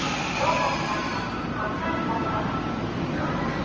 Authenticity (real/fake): real